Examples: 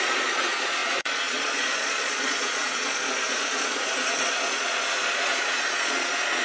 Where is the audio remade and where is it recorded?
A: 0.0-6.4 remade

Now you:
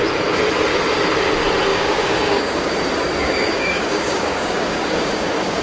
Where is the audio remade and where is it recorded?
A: 0.0-1.7 recorded; 1.7-2.7 remade; 2.7-3.2 recorded; 3.2-5.6 remade

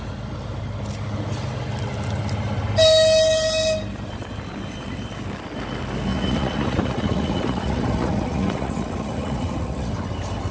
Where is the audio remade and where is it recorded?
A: 0.0-6.1 recorded; 6.1-9.9 remade; 9.9-10.5 recorded